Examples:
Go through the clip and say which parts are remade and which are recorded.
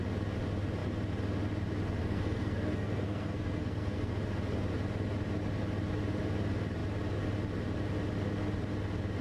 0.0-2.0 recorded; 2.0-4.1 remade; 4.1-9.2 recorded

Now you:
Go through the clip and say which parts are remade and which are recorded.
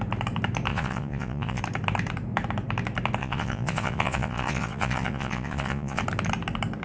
0.0-0.7 recorded; 0.7-1.6 remade; 1.6-3.2 recorded; 3.2-6.0 remade; 6.0-6.8 recorded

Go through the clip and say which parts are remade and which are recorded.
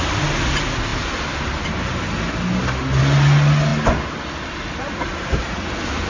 0.0-6.1 recorded